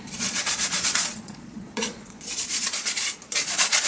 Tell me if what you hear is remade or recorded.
remade